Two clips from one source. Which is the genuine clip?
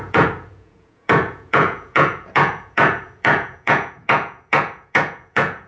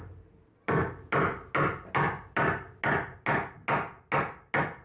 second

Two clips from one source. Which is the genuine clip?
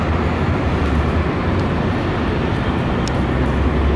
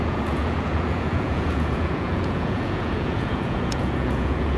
first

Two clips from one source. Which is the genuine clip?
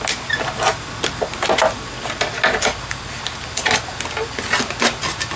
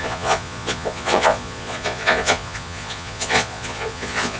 first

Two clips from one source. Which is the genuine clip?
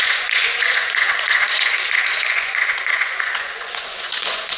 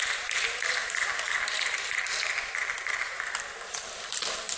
second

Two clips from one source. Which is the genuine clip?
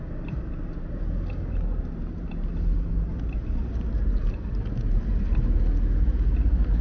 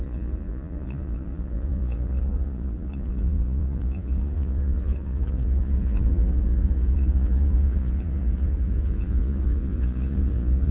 first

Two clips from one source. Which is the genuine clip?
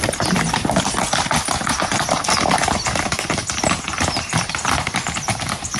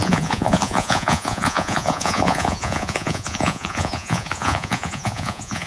first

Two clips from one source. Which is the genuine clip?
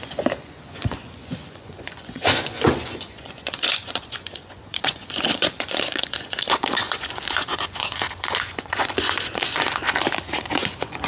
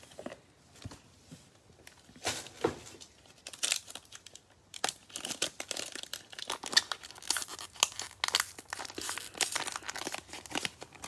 second